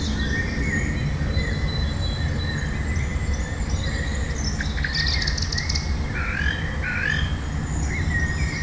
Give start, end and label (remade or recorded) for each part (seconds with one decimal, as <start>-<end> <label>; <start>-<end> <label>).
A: 0.0-8.6 recorded